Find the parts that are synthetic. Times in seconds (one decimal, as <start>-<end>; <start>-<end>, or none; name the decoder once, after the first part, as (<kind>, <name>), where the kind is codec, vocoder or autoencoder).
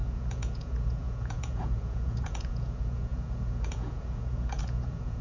0.0-5.2 (vocoder, Vocos)